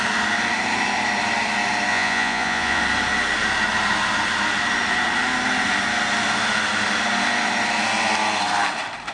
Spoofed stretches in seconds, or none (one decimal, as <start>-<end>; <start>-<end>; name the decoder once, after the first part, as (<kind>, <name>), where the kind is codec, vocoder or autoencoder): 1.9-2.8 (vocoder, Vocos)